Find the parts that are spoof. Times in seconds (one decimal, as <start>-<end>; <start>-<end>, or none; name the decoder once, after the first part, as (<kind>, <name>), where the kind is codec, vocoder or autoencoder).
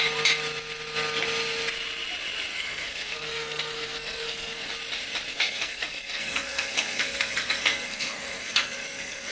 2.5-4.7 (codec, SNAC); 5.3-9.3